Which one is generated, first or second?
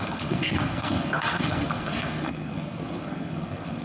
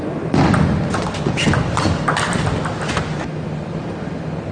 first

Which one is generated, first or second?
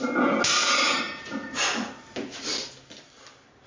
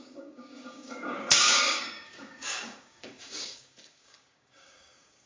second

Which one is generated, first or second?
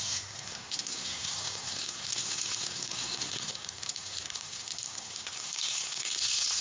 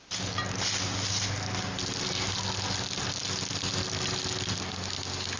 first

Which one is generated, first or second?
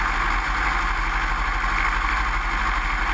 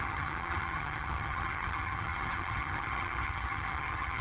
second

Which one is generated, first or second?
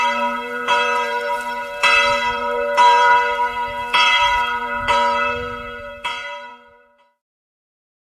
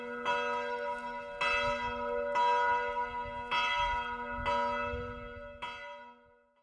first